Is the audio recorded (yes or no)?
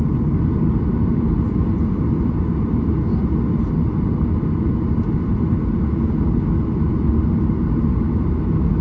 yes